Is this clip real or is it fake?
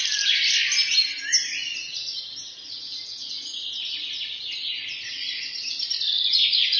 real